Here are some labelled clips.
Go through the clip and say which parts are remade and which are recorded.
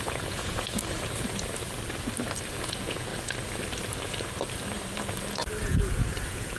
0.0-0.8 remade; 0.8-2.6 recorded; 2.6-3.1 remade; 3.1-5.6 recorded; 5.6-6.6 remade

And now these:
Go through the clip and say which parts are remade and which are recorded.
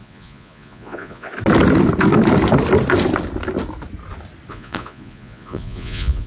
0.0-1.3 remade; 1.3-4.5 recorded; 4.5-6.3 remade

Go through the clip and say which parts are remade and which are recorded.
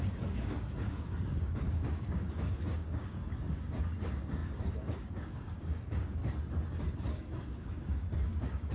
0.0-6.2 remade; 6.2-6.9 recorded; 6.9-8.7 remade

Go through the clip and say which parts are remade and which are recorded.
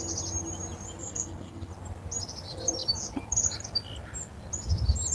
0.0-1.0 recorded; 1.0-1.7 remade; 1.7-5.1 recorded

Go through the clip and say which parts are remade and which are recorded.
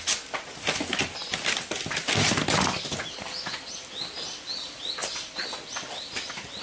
0.0-6.6 recorded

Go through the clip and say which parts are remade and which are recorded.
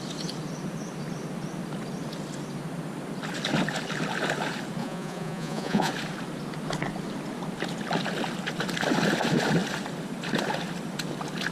0.0-4.8 recorded; 4.8-5.9 remade; 5.9-11.5 recorded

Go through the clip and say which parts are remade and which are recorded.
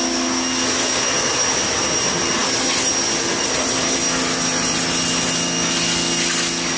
0.0-6.8 recorded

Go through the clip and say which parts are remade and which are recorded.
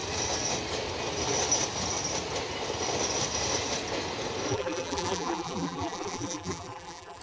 0.0-4.5 recorded; 4.5-7.2 remade